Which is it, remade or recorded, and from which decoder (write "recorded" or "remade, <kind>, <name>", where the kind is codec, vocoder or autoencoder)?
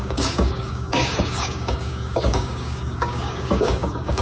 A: remade, codec, DAC